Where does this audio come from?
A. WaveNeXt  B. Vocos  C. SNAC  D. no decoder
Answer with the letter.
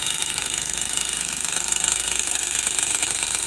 C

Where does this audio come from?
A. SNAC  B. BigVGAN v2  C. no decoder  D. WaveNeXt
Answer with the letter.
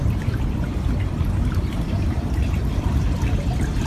C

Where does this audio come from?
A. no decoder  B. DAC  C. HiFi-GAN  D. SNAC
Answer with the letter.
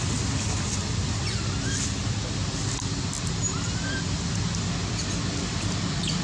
A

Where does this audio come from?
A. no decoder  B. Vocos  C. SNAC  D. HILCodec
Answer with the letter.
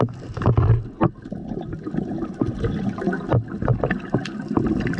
A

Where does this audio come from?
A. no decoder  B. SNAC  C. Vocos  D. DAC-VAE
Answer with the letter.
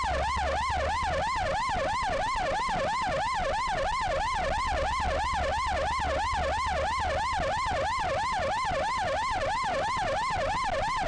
A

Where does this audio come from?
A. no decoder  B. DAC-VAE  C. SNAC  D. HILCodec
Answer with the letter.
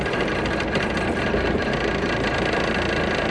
A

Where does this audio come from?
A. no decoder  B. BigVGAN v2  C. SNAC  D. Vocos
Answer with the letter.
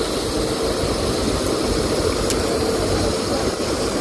A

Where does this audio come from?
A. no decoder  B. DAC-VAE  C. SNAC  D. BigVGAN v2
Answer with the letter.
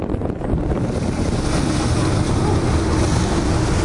A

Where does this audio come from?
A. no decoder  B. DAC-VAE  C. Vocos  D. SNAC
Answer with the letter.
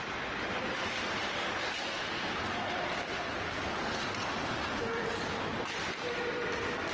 A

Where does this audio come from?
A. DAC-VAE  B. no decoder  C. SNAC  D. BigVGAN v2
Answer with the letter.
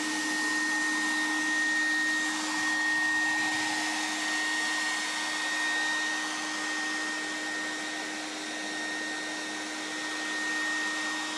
B